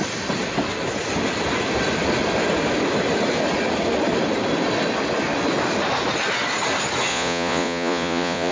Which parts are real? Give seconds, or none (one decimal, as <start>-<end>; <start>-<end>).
0.0-7.1